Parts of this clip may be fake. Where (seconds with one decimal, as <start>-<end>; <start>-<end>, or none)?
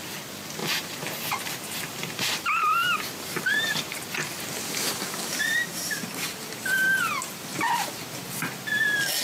0.6-4.1; 5.7-6.6